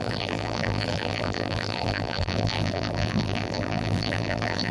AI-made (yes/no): yes